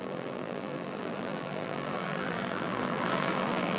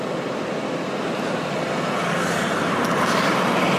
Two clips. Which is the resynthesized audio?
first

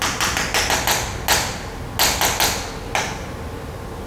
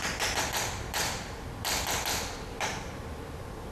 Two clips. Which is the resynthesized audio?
second